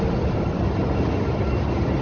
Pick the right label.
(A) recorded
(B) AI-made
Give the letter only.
A